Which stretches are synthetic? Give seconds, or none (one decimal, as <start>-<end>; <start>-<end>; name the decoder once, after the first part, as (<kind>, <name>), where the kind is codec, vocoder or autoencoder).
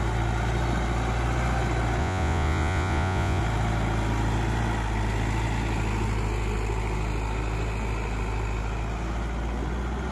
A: 2.0-3.4 (vocoder, Vocos)